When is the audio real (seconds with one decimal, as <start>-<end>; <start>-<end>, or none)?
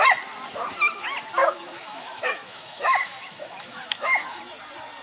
0.0-1.4; 4.4-5.0